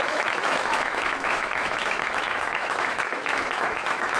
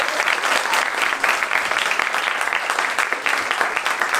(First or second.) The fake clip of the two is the first